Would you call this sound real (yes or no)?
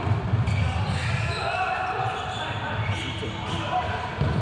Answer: yes